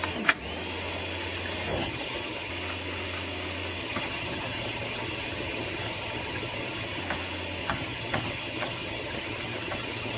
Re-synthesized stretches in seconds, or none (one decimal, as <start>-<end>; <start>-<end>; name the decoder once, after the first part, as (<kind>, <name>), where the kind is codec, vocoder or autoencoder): 1.7-2.5 (vocoder, HiFi-GAN); 3.8-7.0; 7.6-10.2